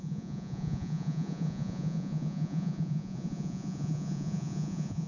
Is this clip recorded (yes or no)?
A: no